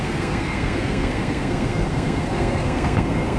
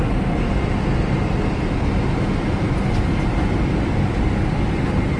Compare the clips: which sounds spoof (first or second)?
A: first